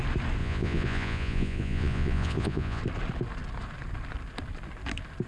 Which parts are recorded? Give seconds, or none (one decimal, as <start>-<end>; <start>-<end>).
0.0-0.4; 2.8-5.3